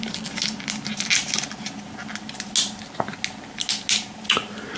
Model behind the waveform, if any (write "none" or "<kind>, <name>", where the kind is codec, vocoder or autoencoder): none